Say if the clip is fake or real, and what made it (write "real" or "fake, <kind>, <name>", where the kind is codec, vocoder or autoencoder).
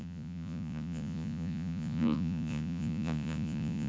fake, vocoder, Vocos